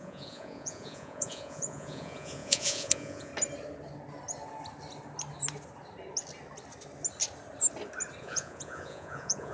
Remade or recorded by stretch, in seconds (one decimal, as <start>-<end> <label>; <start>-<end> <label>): 0.0-3.3 remade; 3.3-8.2 recorded; 8.2-9.5 remade